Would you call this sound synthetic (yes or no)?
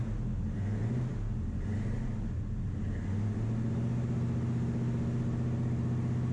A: no